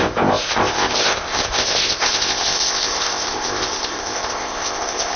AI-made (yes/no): yes